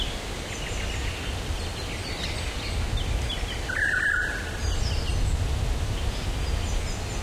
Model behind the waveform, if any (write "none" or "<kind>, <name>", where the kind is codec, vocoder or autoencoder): none